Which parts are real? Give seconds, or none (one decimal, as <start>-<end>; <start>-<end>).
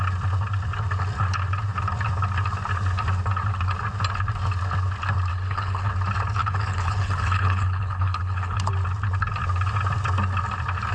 0.0-5.3; 5.9-6.4; 8.7-10.9